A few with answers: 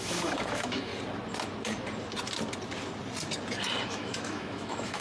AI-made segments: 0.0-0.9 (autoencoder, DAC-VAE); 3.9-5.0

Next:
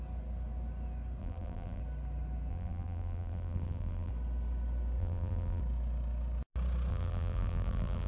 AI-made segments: 1.2-1.8 (vocoder, BigVGAN v2); 2.5-4.1; 5.0-5.6; 6.9-8.1

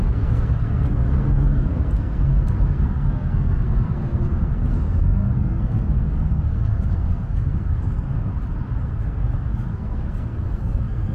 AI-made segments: 0.0-8.3 (codec, SNAC); 8.8-11.1

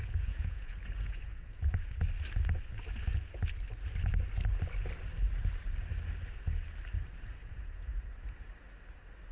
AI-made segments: 0.0-1.9 (vocoder, Vocos); 7.4-8.0

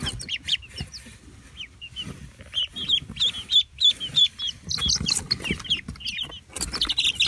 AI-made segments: none

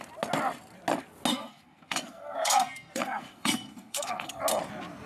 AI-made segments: 1.3-4.4 (codec, SNAC)